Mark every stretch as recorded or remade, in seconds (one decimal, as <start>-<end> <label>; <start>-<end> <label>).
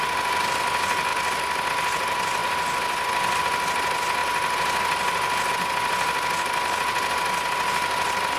0.0-8.4 recorded